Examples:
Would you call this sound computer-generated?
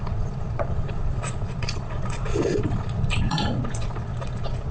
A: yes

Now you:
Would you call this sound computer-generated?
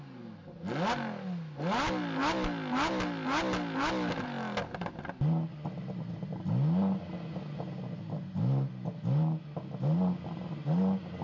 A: no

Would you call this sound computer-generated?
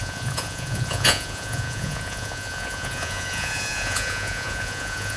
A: yes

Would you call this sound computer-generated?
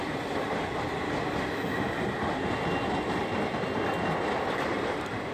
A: no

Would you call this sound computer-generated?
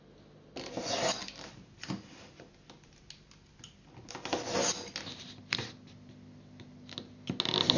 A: no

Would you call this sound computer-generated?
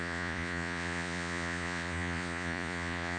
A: yes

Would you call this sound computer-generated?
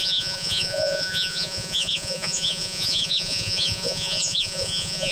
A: yes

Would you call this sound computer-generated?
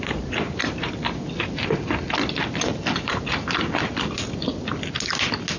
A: no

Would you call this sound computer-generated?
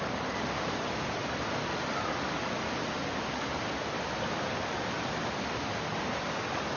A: no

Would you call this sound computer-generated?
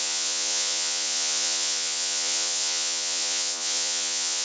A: yes